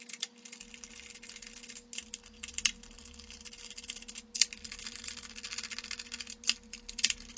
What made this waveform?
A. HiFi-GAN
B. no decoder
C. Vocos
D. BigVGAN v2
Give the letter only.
B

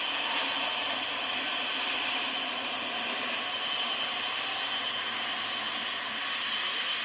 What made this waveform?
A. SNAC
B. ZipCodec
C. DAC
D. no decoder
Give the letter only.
D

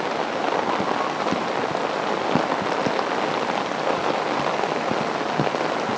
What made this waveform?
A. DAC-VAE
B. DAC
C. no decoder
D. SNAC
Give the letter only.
C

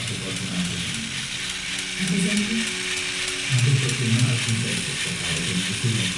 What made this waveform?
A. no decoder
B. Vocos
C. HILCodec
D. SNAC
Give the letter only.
A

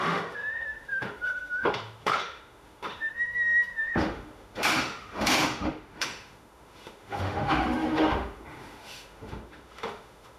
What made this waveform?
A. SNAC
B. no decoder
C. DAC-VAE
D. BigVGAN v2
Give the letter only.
C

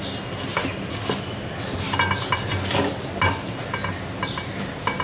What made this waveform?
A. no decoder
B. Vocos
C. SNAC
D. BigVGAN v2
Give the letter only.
A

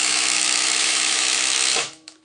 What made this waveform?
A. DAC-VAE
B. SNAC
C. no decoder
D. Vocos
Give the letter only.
A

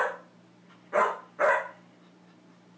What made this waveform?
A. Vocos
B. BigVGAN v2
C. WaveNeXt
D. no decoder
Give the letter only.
D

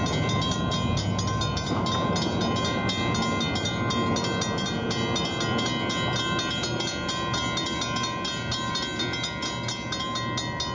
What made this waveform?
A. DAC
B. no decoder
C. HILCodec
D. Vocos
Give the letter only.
B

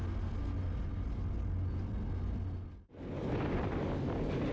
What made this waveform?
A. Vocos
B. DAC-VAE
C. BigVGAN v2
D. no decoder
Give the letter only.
D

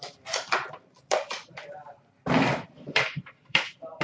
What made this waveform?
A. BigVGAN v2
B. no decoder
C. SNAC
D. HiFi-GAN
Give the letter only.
A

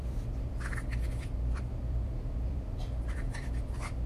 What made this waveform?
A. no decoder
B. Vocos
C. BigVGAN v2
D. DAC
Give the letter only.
C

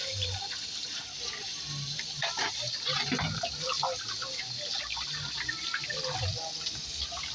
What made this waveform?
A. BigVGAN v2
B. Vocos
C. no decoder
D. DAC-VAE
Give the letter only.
A